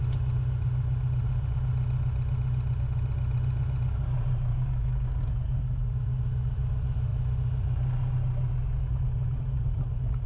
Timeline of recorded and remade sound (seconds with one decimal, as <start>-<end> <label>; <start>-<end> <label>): 0.0-4.5 recorded; 4.5-5.3 remade; 5.3-10.3 recorded